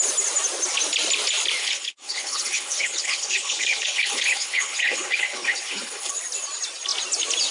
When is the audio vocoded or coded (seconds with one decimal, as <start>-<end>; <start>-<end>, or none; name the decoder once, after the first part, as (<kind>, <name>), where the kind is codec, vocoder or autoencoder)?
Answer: 1.6-6.1 (codec, HILCodec)